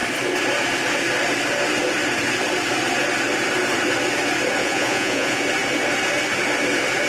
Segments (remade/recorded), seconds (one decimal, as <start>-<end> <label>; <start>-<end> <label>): 0.0-4.6 recorded; 4.6-5.4 remade; 5.4-7.1 recorded